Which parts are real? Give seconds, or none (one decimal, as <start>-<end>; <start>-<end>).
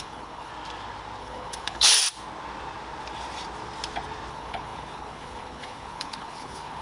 0.5-1.2; 2.0-4.3